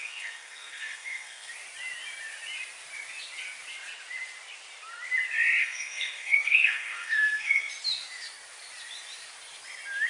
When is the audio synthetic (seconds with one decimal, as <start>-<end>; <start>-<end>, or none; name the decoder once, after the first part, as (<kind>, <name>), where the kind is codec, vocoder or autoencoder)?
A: 0.0-1.5 (codec, SNAC); 5.6-7.7